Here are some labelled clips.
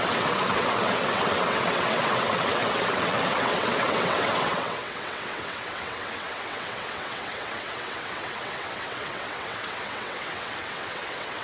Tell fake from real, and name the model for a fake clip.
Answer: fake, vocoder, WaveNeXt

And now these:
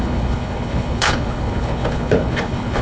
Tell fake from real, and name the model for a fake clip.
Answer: fake, codec, HILCodec